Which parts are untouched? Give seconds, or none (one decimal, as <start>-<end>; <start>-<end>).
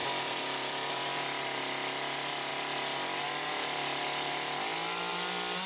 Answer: 1.6-5.7